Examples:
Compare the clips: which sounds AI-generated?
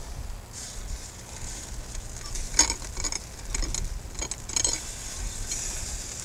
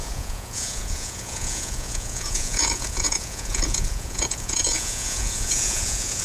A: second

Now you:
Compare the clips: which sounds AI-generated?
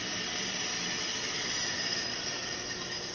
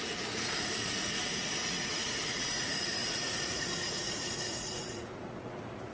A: second